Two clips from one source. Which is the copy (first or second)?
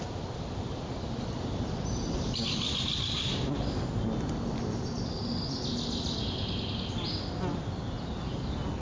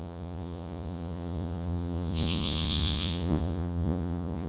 second